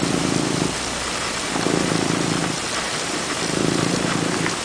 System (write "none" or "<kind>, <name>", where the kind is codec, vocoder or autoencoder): none